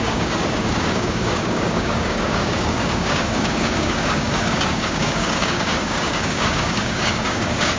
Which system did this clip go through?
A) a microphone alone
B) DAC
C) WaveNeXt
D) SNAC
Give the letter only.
B